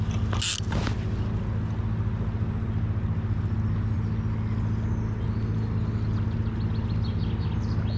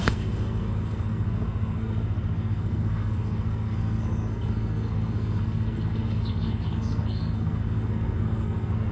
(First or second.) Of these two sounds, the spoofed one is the second